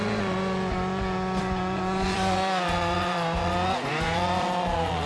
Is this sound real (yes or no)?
no